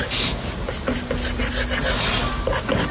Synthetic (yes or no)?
no